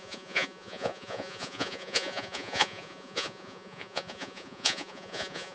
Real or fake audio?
fake